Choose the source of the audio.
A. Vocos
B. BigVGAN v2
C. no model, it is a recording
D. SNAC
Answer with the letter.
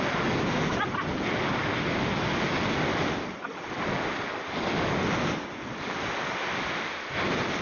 C